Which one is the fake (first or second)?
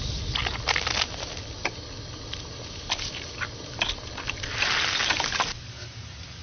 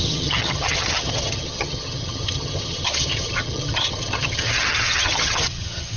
second